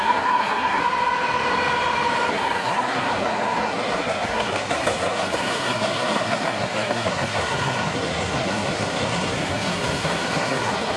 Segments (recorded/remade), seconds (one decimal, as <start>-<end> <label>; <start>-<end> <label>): 0.0-0.8 remade; 0.8-2.3 recorded; 2.3-11.0 remade